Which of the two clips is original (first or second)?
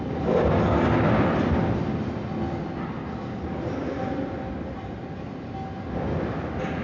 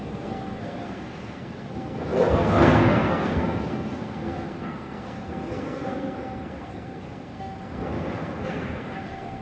first